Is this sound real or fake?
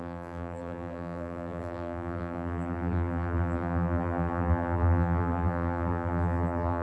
fake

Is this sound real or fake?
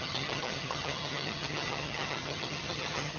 fake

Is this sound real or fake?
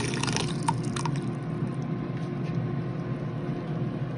real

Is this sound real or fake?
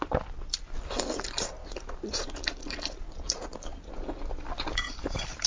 real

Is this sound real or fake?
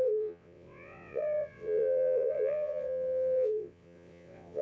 fake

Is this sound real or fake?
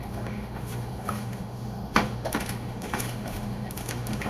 fake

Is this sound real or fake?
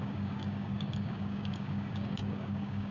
fake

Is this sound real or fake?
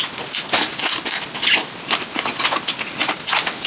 real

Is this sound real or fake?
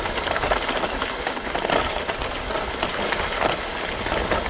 real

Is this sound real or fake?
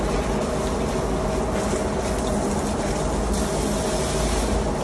real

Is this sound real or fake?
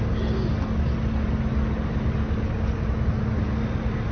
real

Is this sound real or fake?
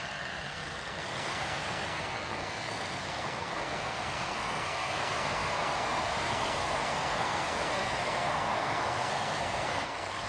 fake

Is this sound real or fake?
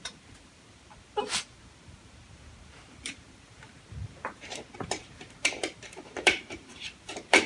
fake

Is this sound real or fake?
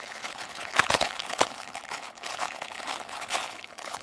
fake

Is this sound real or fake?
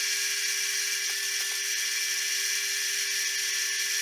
real